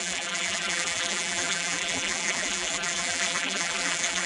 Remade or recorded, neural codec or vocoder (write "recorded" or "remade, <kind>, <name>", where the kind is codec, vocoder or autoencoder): remade, vocoder, BigVGAN v2